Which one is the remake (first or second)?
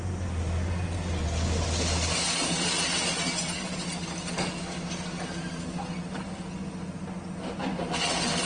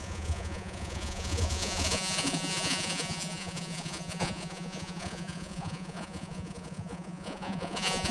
second